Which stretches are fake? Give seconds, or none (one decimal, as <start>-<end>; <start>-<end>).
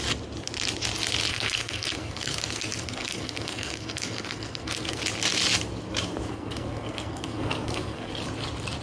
1.3-5.0; 6.3-8.1